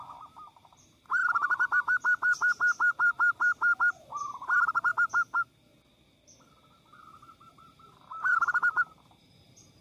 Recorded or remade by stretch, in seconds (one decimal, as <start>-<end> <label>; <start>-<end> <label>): 0.0-4.9 remade; 4.9-7.5 recorded; 7.5-9.8 remade